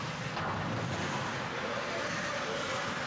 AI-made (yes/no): no